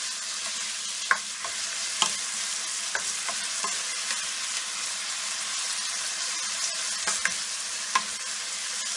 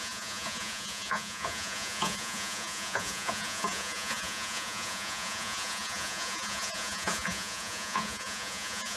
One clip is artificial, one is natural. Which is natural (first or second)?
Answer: first